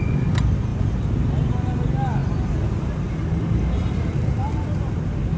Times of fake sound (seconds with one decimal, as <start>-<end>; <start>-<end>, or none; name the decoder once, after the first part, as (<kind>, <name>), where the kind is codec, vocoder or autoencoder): none

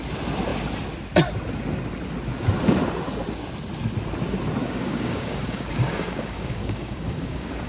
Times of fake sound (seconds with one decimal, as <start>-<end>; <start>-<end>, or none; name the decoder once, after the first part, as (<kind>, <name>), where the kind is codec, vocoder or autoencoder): 4.6-7.7 (codec, DAC)

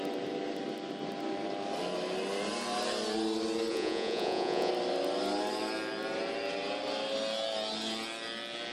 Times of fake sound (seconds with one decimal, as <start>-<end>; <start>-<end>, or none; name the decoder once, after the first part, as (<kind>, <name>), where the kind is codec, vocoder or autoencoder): 3.7-4.7 (vocoder, Vocos)

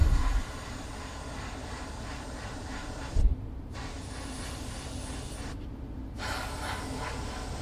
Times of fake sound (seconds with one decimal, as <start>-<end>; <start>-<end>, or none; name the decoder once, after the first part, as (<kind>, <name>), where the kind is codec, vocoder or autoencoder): 0.0-4.4 (vocoder, BigVGAN v2)

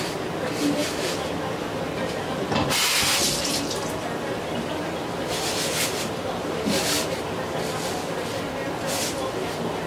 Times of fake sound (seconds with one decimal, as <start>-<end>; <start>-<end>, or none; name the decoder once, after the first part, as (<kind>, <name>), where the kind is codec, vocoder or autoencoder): none

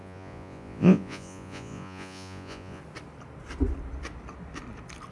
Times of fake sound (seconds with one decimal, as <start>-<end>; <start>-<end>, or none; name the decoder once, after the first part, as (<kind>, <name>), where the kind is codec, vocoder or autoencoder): 0.0-2.8 (vocoder, Vocos)

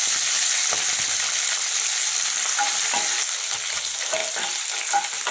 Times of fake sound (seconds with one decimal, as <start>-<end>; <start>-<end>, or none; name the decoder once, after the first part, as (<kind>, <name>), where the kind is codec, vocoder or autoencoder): none